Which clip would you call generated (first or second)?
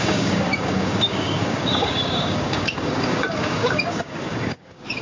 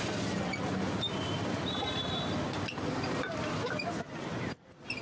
first